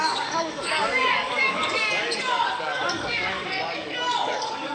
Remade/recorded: remade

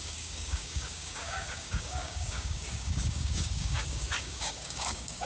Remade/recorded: remade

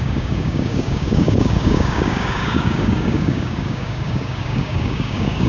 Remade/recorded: remade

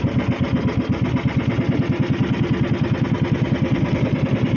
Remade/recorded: recorded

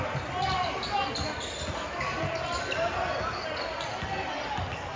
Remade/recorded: recorded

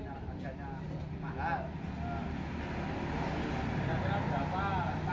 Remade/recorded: recorded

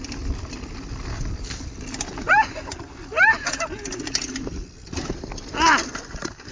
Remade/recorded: recorded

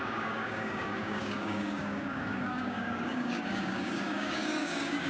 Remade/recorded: remade